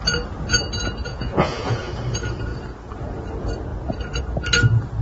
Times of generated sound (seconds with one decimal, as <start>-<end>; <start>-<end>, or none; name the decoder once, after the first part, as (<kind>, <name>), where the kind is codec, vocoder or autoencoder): 1.1-1.9 (vocoder, Vocos)